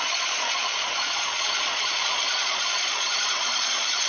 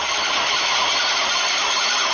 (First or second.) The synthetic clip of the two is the first